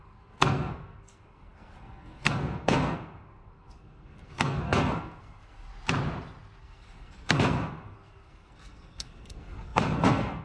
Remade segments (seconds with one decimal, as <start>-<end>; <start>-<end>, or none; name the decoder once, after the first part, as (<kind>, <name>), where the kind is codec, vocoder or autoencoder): 0.0-5.7 (codec, SNAC); 6.6-10.4